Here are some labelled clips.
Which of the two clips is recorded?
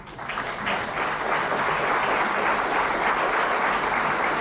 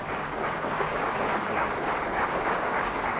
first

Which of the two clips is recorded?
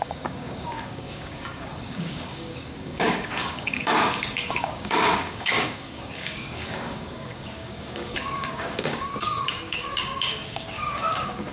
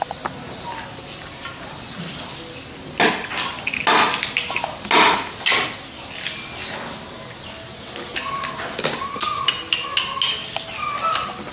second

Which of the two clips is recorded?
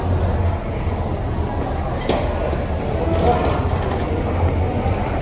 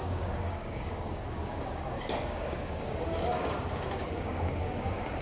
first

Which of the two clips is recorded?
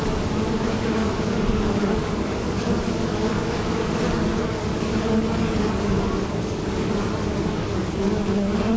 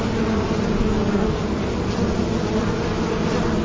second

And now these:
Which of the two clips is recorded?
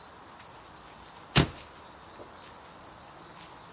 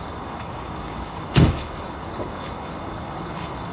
first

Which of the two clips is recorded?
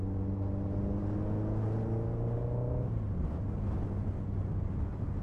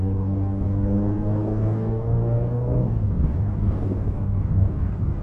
first